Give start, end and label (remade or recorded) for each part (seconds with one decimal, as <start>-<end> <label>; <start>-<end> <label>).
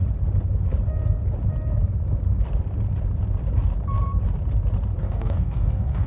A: 0.0-5.0 recorded; 5.0-6.1 remade